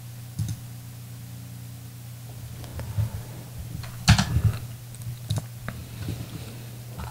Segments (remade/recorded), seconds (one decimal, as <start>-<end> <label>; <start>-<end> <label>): 0.0-5.8 recorded; 5.8-6.5 remade; 6.5-7.1 recorded